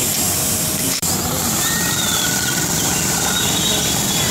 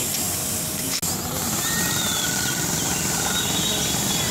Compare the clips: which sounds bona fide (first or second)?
second